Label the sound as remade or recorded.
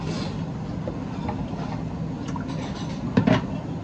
recorded